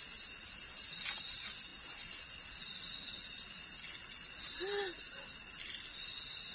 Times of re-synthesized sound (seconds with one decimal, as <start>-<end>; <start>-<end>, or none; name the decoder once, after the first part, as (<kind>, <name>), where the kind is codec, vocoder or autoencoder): none